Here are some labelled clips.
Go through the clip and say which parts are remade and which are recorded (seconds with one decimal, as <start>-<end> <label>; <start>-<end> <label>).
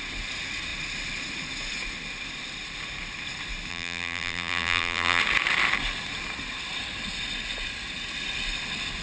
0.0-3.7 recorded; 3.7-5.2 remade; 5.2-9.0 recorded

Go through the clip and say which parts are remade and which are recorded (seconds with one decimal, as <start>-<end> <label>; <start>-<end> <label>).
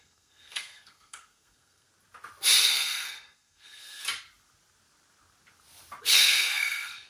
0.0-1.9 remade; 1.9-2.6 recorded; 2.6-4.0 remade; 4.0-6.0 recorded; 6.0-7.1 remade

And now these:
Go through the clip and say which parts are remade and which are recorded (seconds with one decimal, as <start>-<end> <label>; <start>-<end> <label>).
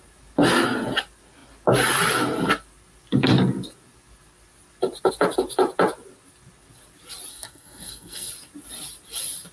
0.0-7.3 recorded; 7.3-8.3 remade; 8.3-9.5 recorded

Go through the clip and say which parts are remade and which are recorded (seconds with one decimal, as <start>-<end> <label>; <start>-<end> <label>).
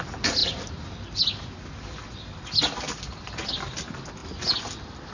0.0-5.1 recorded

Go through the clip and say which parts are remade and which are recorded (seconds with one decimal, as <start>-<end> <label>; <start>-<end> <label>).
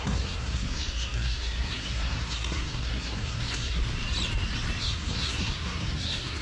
0.0-3.8 remade; 3.8-4.8 recorded; 4.8-6.4 remade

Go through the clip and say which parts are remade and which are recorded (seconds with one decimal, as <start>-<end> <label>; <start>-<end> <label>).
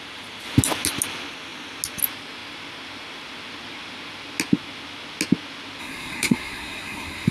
0.0-5.8 recorded; 5.8-7.3 remade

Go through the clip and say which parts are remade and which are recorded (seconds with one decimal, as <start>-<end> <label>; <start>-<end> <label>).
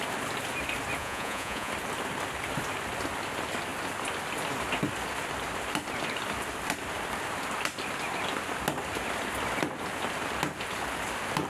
0.0-1.0 recorded; 1.0-1.7 remade; 1.7-11.5 recorded